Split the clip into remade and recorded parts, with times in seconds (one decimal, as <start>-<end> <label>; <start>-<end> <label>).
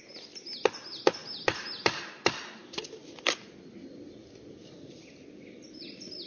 0.0-1.2 recorded; 1.2-1.7 remade; 1.7-3.0 recorded; 3.0-6.3 remade